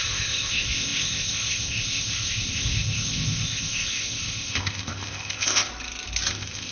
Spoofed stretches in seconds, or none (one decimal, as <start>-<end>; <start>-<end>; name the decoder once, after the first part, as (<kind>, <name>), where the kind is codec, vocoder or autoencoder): 0.0-5.7 (codec, ZipCodec); 6.3-6.7